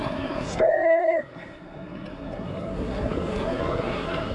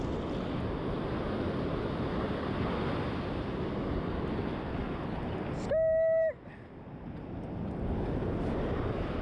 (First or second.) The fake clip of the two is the first